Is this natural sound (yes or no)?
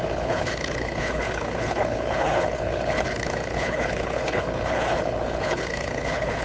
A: no